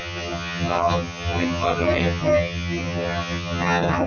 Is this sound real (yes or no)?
no